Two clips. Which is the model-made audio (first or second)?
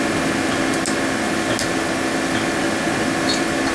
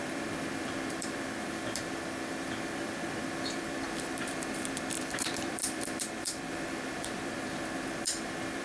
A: second